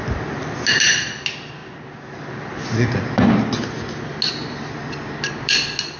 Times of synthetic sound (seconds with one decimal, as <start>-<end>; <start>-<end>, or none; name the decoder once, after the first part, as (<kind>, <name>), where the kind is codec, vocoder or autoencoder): none